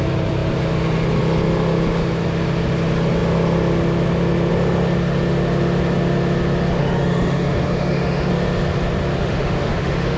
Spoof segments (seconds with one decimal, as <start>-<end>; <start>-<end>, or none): 6.8-8.3; 9.2-10.2